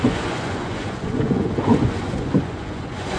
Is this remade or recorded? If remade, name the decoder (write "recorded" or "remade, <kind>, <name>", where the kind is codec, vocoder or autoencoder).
remade, vocoder, Vocos